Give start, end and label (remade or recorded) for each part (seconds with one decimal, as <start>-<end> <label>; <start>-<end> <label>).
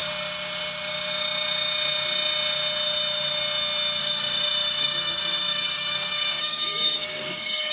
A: 0.0-4.0 recorded; 4.0-7.7 remade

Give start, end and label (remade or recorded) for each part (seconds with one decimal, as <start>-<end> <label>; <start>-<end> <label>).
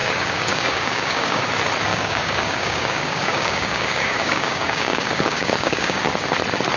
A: 0.0-1.4 remade; 1.4-1.9 recorded; 1.9-6.0 remade; 6.0-6.8 recorded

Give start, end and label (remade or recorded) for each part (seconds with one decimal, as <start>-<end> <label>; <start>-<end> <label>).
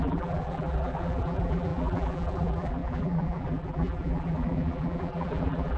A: 0.0-5.8 remade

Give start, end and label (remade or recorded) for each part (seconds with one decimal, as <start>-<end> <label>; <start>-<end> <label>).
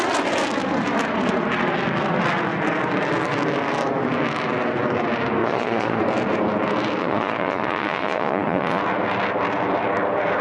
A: 0.0-5.4 recorded; 5.4-6.0 remade; 6.0-7.0 recorded; 7.0-8.8 remade; 8.8-10.4 recorded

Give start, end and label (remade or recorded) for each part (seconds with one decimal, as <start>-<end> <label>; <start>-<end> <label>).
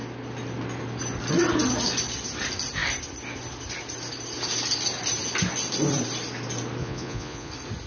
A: 0.0-6.8 recorded; 6.8-7.5 remade; 7.5-7.9 recorded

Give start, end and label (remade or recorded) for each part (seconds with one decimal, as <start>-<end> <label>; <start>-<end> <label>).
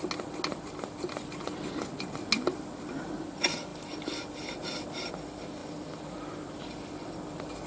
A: 0.0-7.7 recorded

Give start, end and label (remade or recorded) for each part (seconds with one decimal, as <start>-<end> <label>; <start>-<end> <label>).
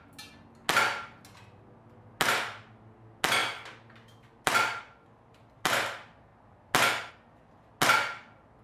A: 0.0-8.6 recorded